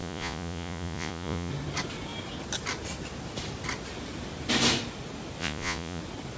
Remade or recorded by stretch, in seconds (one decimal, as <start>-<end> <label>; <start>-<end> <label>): 0.0-1.5 remade; 1.5-5.4 recorded; 5.4-6.0 remade; 6.0-6.4 recorded